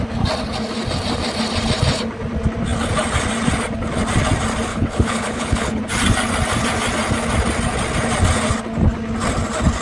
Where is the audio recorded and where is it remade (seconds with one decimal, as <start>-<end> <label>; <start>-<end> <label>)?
0.0-4.7 recorded; 4.7-5.8 remade; 5.8-9.8 recorded